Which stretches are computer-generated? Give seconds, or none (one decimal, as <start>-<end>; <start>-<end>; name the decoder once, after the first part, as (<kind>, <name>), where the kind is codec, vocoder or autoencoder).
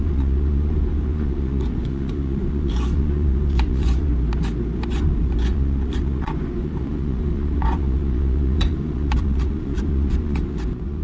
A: 0.0-4.1 (vocoder, Vocos); 4.9-11.0